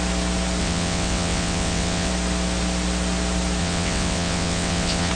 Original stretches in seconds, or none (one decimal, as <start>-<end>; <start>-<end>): 0.0-0.6; 2.1-3.6